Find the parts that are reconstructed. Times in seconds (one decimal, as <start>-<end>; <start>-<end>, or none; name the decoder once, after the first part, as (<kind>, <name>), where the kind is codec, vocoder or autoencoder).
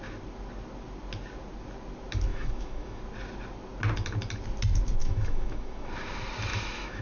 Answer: 2.3-3.0 (autoencoder, DAC-VAE); 5.0-5.9; 6.5-7.0